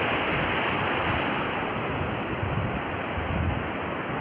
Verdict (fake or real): real